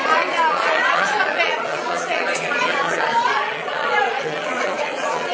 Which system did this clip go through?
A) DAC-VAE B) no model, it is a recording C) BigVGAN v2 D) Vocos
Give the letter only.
D